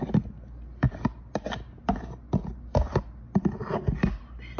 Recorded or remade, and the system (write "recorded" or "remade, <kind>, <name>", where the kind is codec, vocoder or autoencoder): recorded